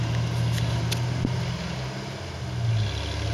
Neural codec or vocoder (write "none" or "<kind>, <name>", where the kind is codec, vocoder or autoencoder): none